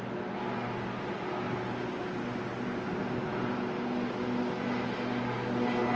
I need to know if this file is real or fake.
real